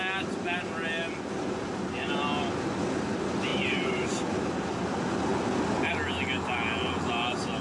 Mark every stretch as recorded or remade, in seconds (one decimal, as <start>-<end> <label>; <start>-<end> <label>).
0.0-3.5 recorded; 3.5-4.8 remade; 4.8-5.3 recorded; 5.3-5.9 remade; 5.9-7.6 recorded